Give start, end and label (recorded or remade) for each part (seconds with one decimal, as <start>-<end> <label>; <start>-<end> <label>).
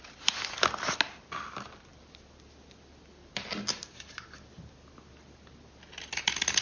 0.0-6.6 recorded